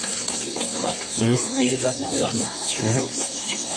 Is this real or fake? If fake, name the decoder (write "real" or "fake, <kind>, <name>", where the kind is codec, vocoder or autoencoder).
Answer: fake, codec, SNAC